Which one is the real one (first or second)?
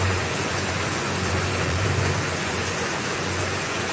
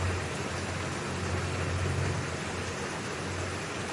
second